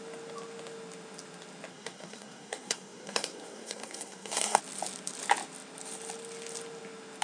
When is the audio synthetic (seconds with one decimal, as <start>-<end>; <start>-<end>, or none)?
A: 1.7-4.6